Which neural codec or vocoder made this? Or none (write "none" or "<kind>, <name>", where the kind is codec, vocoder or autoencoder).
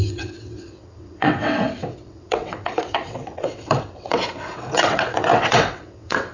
vocoder, WaveNeXt